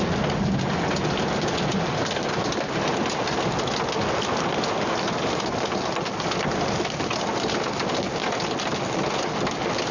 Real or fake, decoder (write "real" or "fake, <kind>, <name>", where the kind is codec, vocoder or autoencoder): real